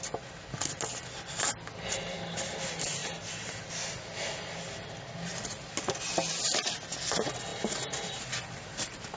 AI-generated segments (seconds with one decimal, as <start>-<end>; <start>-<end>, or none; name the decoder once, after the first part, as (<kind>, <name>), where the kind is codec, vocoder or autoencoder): none